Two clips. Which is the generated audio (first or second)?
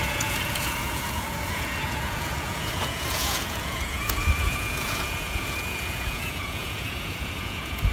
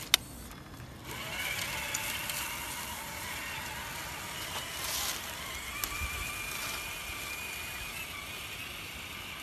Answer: first